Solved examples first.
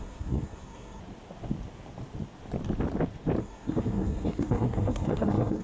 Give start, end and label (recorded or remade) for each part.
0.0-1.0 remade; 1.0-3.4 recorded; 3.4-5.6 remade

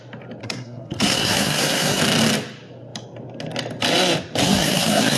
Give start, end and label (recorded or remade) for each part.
0.0-0.4 recorded; 0.4-2.0 remade; 2.0-4.4 recorded; 4.4-5.2 remade

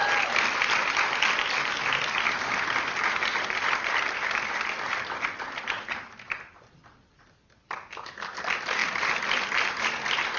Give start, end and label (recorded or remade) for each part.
0.0-10.4 recorded

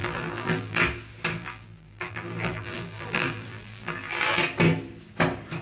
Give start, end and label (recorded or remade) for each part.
0.0-0.8 remade; 0.8-1.4 recorded; 1.4-4.4 remade; 4.4-5.6 recorded

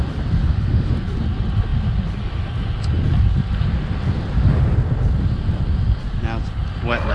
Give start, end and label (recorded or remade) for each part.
0.0-0.4 recorded; 0.4-0.9 remade; 0.9-7.1 recorded

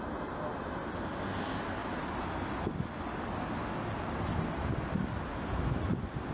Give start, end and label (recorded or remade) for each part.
0.0-6.3 recorded

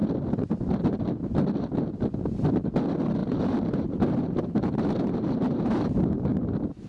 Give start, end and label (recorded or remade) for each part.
0.0-3.2 recorded; 3.2-6.1 remade; 6.1-6.9 recorded

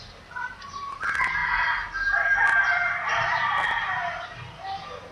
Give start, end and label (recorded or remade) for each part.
0.0-5.1 recorded